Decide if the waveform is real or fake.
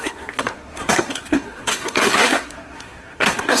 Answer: fake